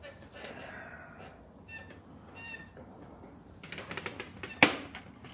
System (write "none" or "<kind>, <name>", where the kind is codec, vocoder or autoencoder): none